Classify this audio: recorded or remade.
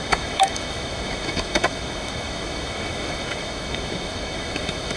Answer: remade